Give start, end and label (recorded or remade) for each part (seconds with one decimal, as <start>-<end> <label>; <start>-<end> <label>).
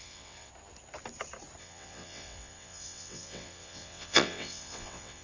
0.0-0.5 remade; 0.5-1.6 recorded; 1.6-5.2 remade